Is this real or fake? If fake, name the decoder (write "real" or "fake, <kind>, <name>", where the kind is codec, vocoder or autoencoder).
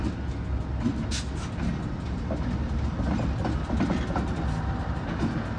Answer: real